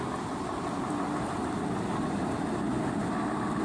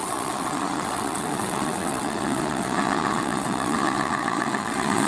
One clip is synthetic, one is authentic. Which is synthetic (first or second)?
second